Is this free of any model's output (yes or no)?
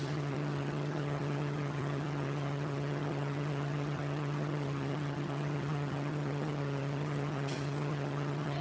no